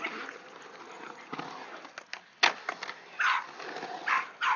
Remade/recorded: recorded